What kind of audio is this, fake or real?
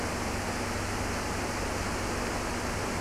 real